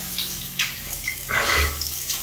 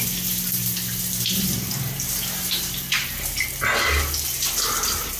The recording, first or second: second